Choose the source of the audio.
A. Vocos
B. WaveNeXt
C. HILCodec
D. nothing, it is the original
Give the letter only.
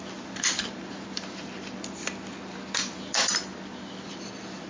D